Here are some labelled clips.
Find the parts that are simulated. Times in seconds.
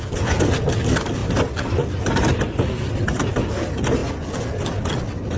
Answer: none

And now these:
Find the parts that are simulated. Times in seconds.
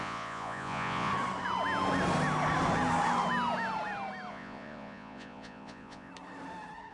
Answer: 0.0-1.1; 4.3-6.1